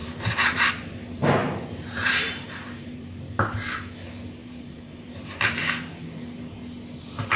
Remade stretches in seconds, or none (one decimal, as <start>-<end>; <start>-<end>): 0.0-0.7; 1.4-3.2; 4.4-6.2